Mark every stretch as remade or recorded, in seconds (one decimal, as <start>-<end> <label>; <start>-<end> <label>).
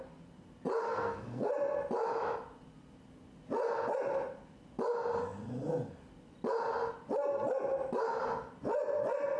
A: 0.0-0.8 recorded; 0.8-1.5 remade; 1.5-9.4 recorded